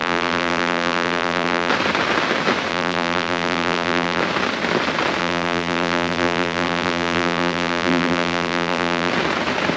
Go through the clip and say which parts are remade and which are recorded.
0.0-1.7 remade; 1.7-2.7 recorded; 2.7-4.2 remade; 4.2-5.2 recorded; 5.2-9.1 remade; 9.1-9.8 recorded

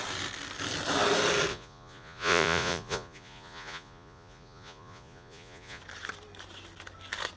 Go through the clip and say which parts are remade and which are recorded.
0.0-1.5 recorded; 1.5-5.8 remade; 5.8-7.4 recorded

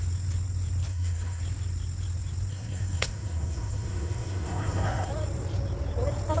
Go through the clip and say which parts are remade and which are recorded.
0.0-0.9 recorded; 0.9-1.4 remade; 1.4-2.5 recorded; 2.5-5.1 remade; 5.1-6.4 recorded

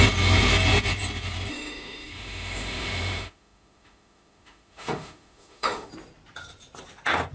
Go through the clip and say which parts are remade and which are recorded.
0.0-1.5 recorded; 1.5-5.9 remade; 5.9-7.3 recorded

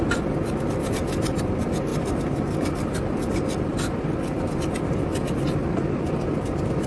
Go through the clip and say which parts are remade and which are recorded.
0.0-6.9 recorded

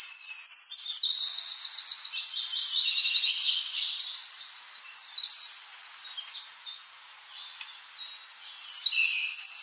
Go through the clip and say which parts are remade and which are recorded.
0.0-9.6 recorded

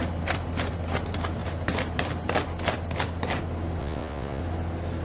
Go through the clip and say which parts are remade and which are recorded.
0.0-3.8 recorded; 3.8-4.4 remade; 4.4-5.0 recorded